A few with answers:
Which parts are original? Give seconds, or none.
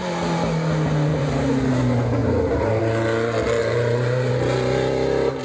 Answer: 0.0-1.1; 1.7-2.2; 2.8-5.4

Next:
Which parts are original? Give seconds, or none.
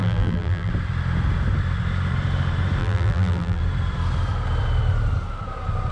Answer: 0.7-2.8; 3.6-5.9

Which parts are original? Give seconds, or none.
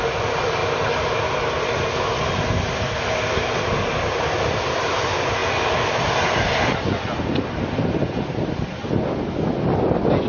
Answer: 0.0-10.3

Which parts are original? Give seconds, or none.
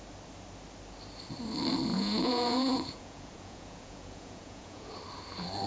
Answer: 0.0-1.9; 4.9-5.7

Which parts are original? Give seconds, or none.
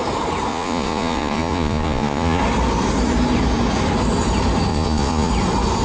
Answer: 0.0-0.5; 2.4-4.7; 5.3-5.8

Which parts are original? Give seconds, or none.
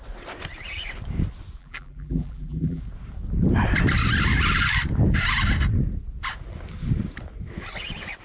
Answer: 0.0-1.6; 2.8-8.2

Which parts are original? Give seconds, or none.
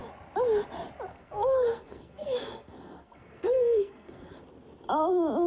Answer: 0.0-1.1; 4.4-5.5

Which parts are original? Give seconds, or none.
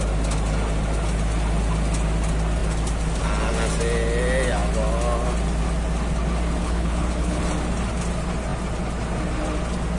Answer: 0.0-6.6; 7.4-10.0